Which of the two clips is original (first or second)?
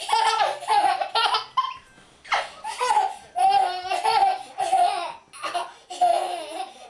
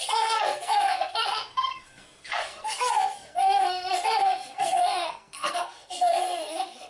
first